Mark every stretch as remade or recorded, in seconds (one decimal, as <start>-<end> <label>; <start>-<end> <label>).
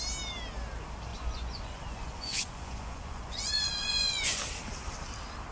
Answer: 0.0-1.1 recorded; 1.1-4.4 remade; 4.4-5.5 recorded